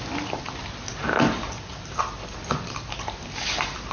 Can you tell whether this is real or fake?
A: real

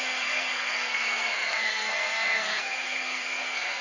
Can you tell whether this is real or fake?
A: fake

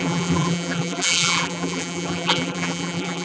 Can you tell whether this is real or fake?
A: fake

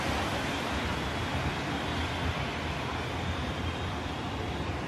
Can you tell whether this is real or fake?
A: real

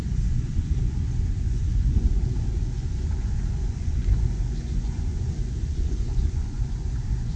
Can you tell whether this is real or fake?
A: fake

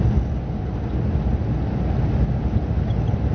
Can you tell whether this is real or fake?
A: real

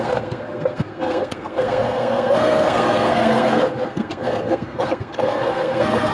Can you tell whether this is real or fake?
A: fake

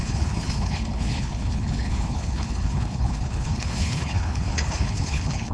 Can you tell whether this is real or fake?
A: fake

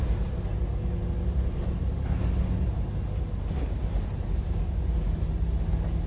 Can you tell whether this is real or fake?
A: real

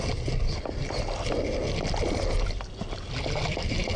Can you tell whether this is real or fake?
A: real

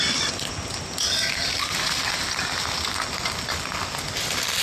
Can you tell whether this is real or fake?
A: real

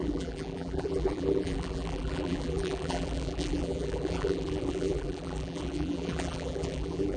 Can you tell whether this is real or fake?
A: fake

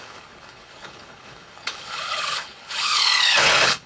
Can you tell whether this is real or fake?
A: fake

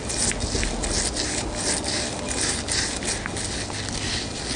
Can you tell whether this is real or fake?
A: real